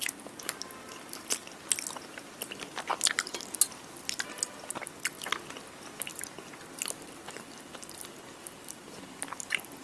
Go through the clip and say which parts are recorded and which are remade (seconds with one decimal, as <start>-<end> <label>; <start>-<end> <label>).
0.0-9.8 recorded